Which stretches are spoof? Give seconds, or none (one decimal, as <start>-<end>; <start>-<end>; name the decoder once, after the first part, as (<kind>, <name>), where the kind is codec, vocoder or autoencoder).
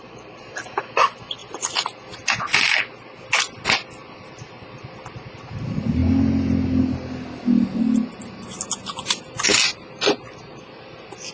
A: 1.4-2.0 (vocoder, BigVGAN v2)